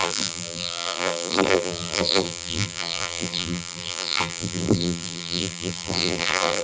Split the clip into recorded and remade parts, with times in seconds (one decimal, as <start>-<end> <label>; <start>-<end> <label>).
0.0-6.6 remade